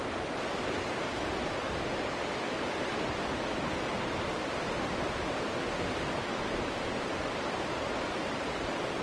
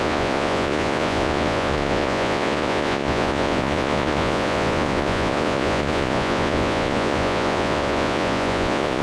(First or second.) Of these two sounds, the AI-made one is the second